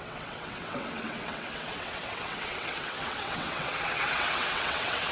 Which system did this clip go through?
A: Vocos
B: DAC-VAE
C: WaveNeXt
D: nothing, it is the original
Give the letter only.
C